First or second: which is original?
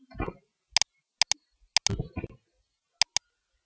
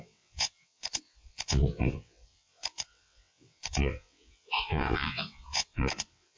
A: first